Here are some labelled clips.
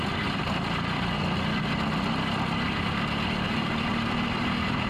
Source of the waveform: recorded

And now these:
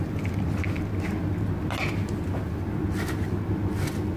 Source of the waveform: recorded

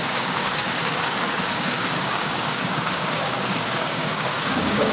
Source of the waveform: remade